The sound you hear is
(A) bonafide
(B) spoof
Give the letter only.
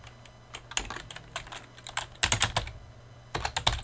A